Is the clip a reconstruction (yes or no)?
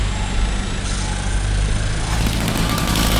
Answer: no